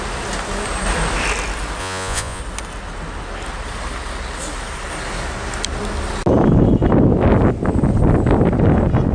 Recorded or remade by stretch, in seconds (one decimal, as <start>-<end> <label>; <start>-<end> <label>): 0.0-1.8 recorded; 1.8-2.4 remade; 2.4-9.1 recorded